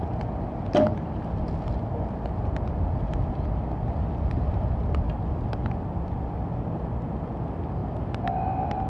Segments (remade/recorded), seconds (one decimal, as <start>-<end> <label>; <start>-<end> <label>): 0.0-8.9 recorded